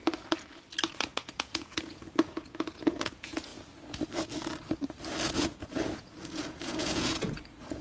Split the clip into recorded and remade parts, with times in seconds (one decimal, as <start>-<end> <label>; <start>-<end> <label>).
0.0-0.9 recorded; 0.9-3.5 remade; 3.5-5.3 recorded; 5.3-7.8 remade